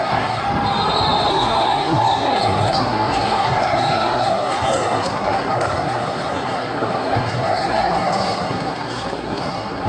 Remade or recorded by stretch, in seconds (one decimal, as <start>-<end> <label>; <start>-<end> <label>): 0.0-0.4 remade; 0.4-1.3 recorded; 1.3-9.9 remade